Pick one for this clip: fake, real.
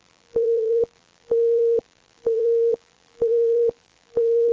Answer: fake